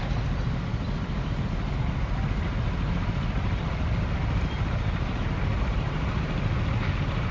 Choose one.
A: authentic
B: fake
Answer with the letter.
A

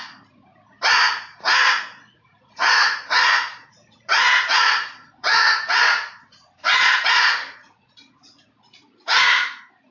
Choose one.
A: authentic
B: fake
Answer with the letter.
B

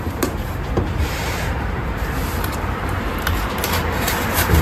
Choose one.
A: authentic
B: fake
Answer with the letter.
B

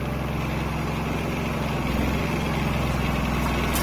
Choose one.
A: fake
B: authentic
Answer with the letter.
B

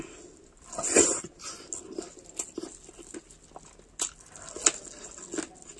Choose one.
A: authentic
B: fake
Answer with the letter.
A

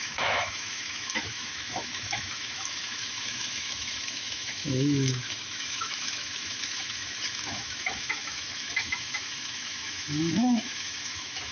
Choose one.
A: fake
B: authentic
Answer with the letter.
A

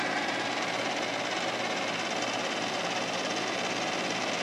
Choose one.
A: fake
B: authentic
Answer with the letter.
B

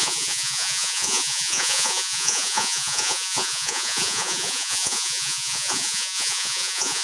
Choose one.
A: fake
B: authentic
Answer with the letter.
A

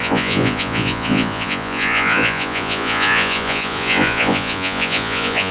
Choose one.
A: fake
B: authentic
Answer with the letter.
A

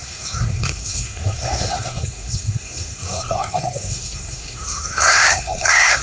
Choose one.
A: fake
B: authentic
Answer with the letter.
A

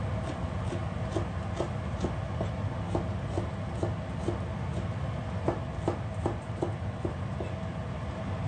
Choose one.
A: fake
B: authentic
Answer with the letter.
B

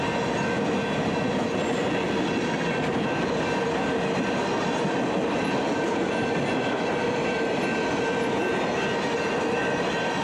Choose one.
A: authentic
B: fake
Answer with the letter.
A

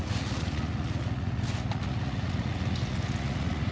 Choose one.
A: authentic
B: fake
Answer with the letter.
B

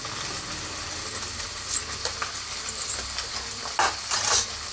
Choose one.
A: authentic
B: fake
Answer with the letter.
A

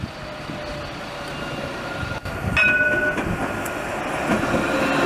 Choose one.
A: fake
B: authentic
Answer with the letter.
B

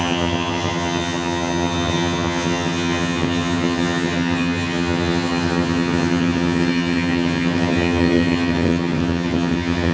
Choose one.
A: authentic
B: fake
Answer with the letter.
B